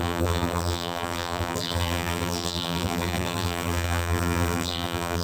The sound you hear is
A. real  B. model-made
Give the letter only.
B